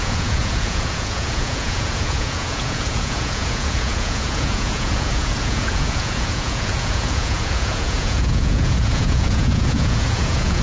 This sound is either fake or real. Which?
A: fake